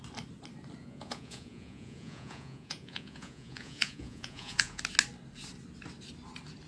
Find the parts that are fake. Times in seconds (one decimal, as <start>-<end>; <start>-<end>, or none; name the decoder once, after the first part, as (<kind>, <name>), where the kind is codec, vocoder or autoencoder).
0.8-4.8 (vocoder, Vocos)